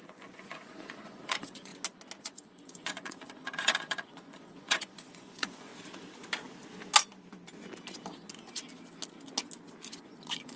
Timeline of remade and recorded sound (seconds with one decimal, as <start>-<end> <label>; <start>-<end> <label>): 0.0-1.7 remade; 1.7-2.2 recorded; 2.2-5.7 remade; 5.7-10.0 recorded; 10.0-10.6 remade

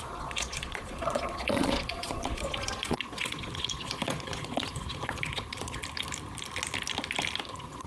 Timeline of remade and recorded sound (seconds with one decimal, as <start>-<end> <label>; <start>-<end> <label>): 0.0-5.8 remade; 5.8-7.4 recorded; 7.4-7.9 remade

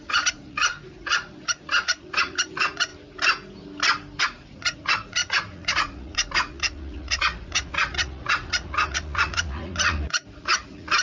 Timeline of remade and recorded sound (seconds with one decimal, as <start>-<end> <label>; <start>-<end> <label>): 0.0-2.9 remade; 2.9-4.2 recorded; 4.2-11.0 remade